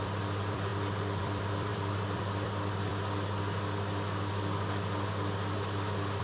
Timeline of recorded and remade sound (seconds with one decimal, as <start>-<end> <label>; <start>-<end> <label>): 0.0-2.9 remade; 2.9-6.2 recorded